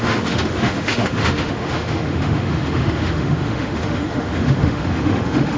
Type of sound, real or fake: fake